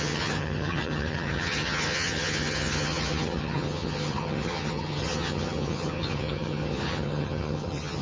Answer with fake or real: fake